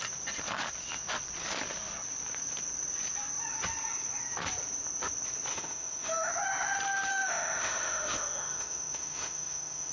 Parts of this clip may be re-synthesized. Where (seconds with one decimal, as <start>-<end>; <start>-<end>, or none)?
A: 5.5-6.3; 7.1-9.9